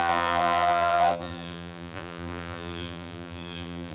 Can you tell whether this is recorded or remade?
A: remade